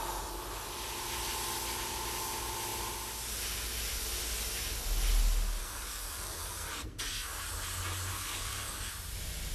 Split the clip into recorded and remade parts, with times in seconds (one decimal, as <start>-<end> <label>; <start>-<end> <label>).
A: 0.0-5.6 recorded; 5.6-7.4 remade; 7.4-8.1 recorded; 8.1-8.9 remade; 8.9-9.5 recorded